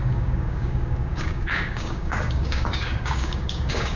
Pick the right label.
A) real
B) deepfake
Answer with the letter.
B